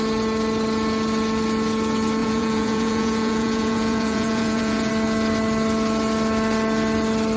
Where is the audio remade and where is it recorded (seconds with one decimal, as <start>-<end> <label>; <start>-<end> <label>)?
0.0-2.2 recorded; 2.2-4.9 remade; 4.9-7.4 recorded